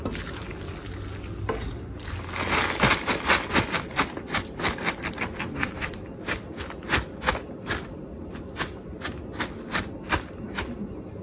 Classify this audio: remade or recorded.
recorded